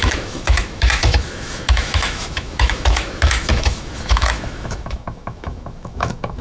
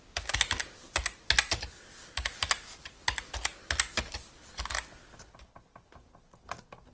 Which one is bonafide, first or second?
second